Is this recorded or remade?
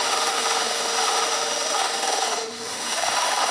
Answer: remade